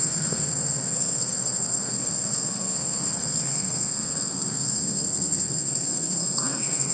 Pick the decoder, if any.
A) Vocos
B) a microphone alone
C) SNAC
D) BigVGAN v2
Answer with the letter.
C